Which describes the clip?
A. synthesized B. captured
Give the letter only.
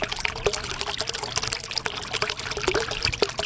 B